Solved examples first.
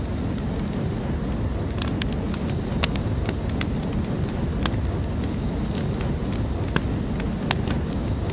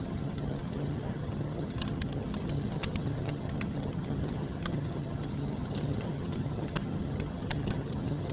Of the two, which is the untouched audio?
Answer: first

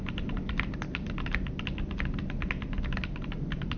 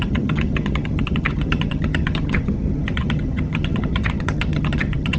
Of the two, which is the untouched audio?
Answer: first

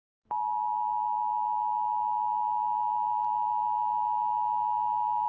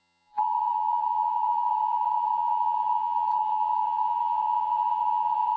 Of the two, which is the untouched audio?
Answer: first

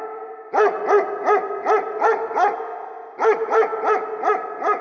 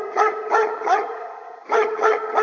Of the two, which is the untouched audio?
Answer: first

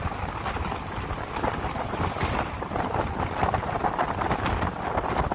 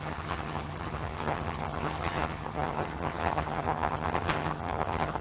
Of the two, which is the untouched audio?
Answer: first